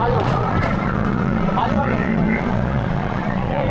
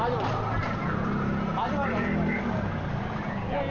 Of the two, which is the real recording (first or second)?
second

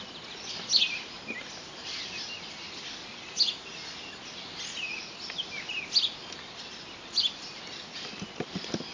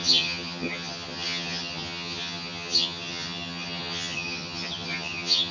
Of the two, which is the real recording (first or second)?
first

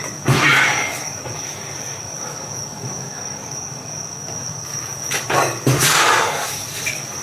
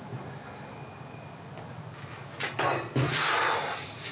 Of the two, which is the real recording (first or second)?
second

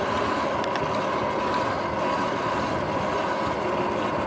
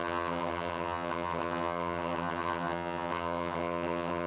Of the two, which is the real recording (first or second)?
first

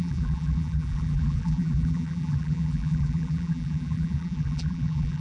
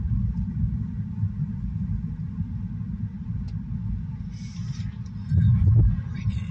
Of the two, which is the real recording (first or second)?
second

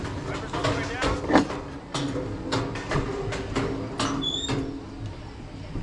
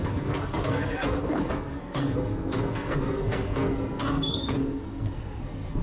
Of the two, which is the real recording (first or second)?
first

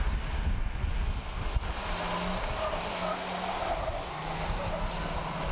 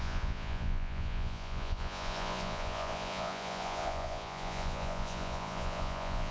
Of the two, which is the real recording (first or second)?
first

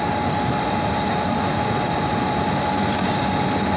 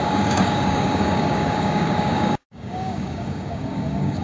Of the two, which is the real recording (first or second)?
first